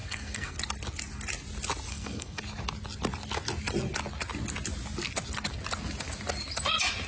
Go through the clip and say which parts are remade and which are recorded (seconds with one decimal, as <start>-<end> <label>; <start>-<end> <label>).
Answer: 0.0-0.6 remade; 0.6-1.9 recorded; 1.9-2.4 remade; 2.4-7.1 recorded